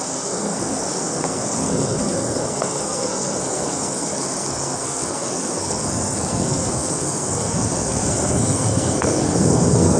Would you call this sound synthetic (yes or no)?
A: yes